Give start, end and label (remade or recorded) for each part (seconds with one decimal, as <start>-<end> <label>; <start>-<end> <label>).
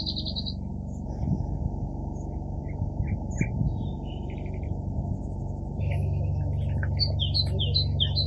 0.0-8.3 recorded